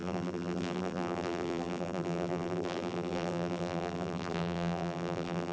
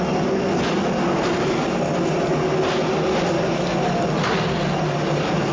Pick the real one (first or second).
second